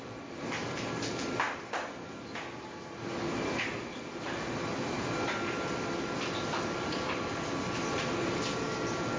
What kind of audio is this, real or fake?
real